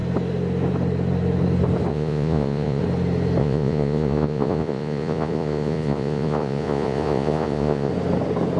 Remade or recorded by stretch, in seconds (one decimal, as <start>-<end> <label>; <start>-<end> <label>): 0.0-1.9 recorded; 1.9-2.8 remade; 2.8-3.4 recorded; 3.4-7.9 remade; 7.9-8.6 recorded